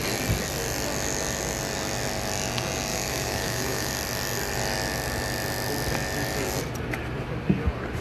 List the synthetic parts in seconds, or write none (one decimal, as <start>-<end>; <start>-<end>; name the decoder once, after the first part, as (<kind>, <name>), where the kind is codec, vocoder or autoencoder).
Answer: 2.9-3.9 (autoencoder, DAC-VAE)